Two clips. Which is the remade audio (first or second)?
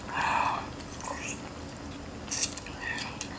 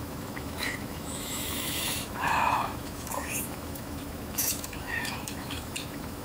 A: second